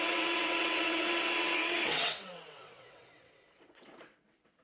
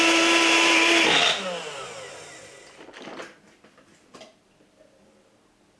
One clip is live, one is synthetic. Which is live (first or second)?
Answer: second